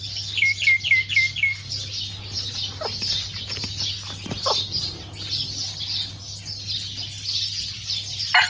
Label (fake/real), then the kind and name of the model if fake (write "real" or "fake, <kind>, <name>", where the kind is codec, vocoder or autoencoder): real